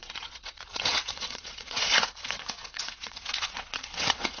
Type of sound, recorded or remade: remade